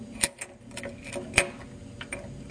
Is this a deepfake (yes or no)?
no